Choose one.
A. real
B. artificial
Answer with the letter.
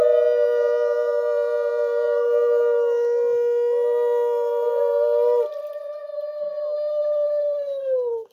A